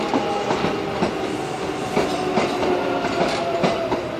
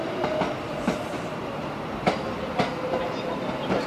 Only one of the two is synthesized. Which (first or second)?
second